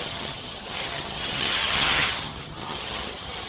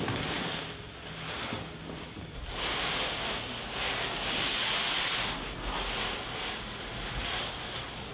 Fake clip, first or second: first